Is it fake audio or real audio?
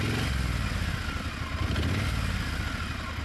real